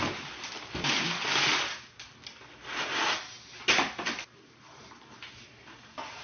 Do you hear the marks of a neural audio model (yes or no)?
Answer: no